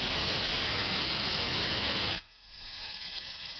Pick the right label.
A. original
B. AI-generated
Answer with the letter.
B